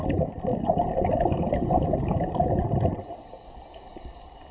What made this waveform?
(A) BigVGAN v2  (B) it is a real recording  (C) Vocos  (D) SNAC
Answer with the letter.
B